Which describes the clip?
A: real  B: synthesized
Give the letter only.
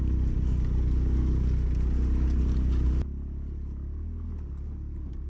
A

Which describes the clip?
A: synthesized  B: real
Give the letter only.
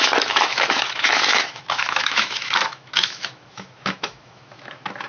A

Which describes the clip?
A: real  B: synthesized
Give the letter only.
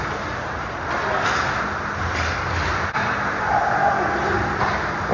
A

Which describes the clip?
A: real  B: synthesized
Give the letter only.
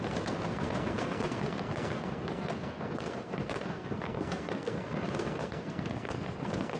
B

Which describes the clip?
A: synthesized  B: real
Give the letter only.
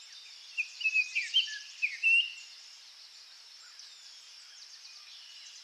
A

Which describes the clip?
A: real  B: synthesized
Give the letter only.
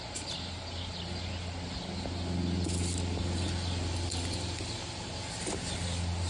A